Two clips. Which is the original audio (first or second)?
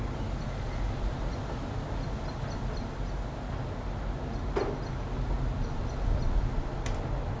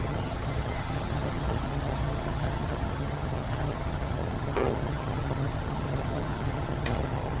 first